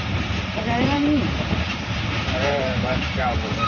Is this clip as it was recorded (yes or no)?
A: no